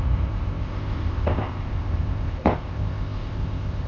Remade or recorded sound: remade